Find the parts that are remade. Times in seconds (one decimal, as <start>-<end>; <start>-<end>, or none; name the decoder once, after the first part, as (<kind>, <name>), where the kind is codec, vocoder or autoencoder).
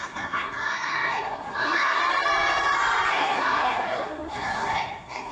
0.0-2.0 (codec, SNAC); 3.1-5.3